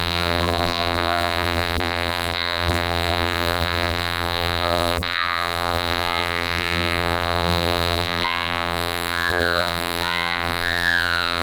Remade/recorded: remade